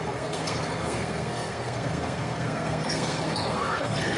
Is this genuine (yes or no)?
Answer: no